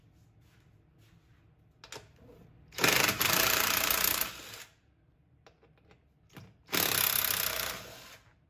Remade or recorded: recorded